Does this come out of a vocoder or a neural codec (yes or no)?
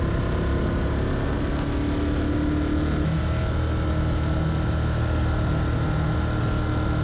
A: no